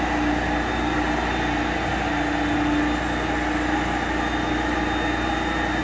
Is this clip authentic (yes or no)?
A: yes